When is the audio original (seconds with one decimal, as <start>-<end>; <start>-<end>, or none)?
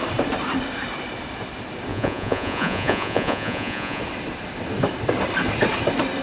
0.0-1.9; 4.0-6.2